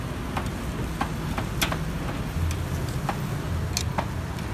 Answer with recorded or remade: recorded